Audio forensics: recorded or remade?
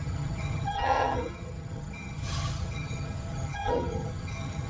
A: remade